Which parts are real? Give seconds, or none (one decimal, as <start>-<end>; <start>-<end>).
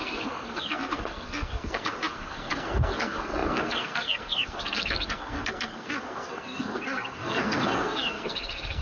none